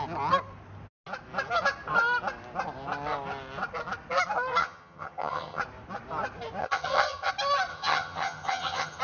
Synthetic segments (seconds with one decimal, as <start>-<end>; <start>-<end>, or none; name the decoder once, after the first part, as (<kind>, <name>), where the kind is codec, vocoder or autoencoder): 4.6-5.6 (vocoder, HiFi-GAN); 6.6-7.3; 7.7-9.0